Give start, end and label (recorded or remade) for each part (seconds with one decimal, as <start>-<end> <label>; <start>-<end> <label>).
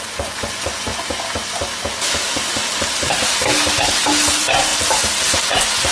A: 0.0-0.9 remade; 0.9-4.3 recorded; 4.3-4.7 remade; 4.7-5.5 recorded; 5.5-5.9 remade